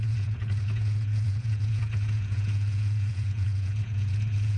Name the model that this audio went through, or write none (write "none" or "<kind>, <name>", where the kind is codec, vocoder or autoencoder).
vocoder, Vocos